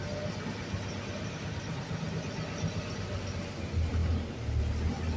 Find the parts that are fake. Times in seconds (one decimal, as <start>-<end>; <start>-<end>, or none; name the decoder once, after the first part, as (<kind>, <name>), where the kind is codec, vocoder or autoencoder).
none